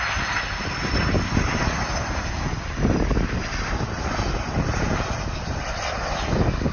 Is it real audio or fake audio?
real